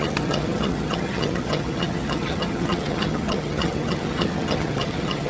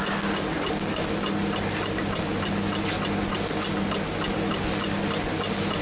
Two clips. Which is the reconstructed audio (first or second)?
first